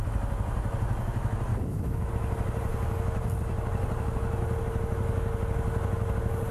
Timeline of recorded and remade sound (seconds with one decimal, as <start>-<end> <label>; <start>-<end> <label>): 0.0-1.5 recorded; 1.5-2.1 remade; 2.1-6.5 recorded